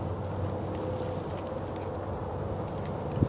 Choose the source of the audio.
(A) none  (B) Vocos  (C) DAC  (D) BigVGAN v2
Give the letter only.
A